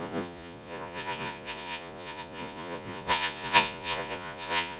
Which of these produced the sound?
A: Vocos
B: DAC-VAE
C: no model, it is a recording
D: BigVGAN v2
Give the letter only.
A